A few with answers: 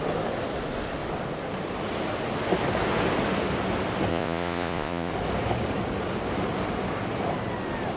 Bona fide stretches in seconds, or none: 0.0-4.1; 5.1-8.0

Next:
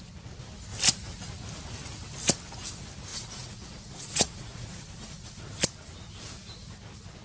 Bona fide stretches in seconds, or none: 0.0-3.1; 5.4-7.2

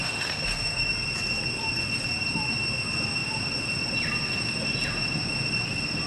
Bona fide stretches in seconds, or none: 0.9-6.1